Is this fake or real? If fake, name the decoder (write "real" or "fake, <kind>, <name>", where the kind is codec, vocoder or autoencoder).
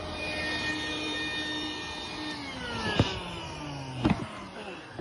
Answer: real